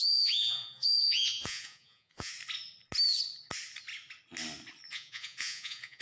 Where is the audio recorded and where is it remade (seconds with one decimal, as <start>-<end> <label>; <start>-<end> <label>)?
0.0-2.3 remade; 2.3-4.9 recorded; 4.9-6.0 remade